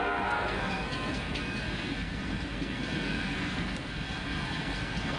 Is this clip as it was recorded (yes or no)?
no